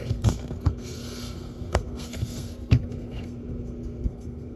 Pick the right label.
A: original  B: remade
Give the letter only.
B